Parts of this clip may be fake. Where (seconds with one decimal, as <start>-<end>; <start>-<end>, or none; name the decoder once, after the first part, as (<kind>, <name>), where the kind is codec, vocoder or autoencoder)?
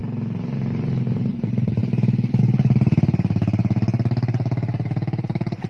1.3-5.7 (vocoder, BigVGAN v2)